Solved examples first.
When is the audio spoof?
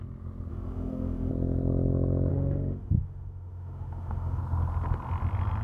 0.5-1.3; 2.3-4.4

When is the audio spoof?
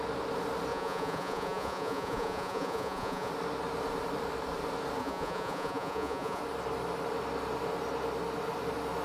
0.7-3.3; 5.0-6.4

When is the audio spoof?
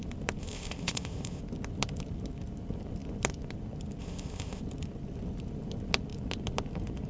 0.4-1.4; 4.0-4.6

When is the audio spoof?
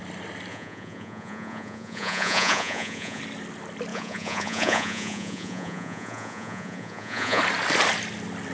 0.5-3.2; 3.9-7.4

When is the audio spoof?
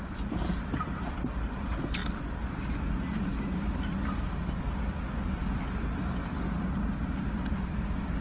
none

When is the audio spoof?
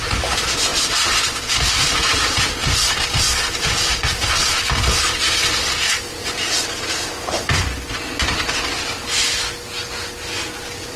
none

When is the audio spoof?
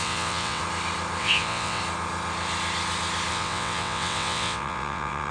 0.0-0.6; 1.2-1.8; 3.3-5.3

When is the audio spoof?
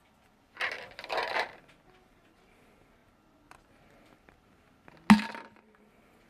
none